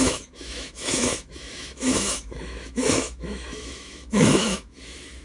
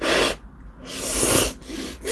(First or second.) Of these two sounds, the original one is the second